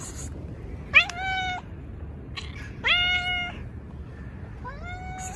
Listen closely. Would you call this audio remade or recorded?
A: recorded